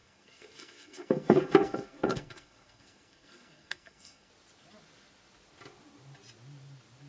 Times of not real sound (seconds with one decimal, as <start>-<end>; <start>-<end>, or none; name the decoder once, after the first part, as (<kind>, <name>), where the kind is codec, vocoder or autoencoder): 0.0-4.3 (codec, SNAC)

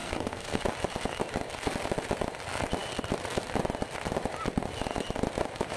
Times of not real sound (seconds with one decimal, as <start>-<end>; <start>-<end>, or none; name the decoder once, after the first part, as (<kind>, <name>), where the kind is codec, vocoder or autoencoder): 0.0-0.6 (codec, SNAC)

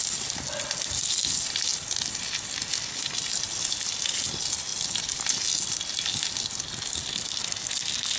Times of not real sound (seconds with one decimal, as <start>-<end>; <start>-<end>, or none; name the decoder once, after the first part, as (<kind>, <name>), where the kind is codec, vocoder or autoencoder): none